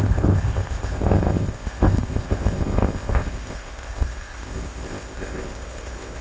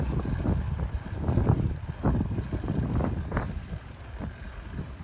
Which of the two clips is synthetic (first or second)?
first